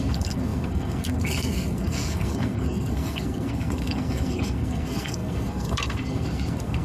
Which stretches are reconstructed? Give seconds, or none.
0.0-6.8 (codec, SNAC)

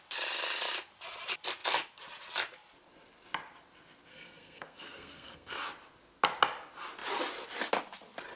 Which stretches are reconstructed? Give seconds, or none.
4.1-5.6 (codec, SNAC)

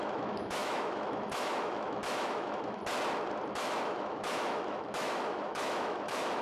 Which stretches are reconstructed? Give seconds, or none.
0.0-2.8 (autoencoder, DAC-VAE); 3.5-6.4

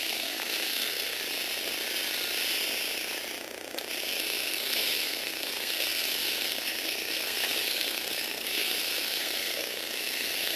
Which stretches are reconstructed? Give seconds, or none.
0.0-1.2 (codec, SNAC); 4.0-10.6

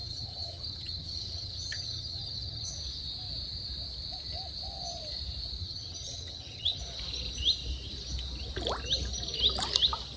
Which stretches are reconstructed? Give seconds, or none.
0.0-2.7 (vocoder, HiFi-GAN); 5.6-6.8

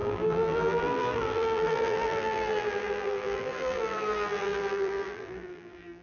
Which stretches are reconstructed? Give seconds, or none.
0.0-6.0 (vocoder, BigVGAN v2)

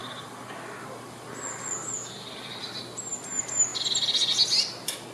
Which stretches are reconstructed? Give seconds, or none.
none

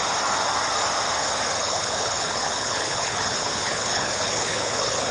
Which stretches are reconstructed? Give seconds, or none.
1.6-5.1 (codec, HILCodec)